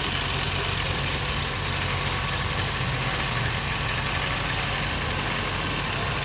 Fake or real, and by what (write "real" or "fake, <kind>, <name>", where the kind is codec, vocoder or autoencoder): real